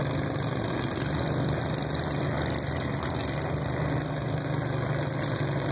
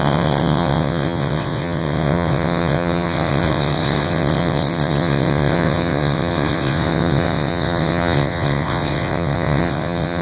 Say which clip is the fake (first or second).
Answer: second